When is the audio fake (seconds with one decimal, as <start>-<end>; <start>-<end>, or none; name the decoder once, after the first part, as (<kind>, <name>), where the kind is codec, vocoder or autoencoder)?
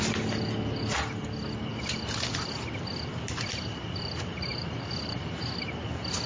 none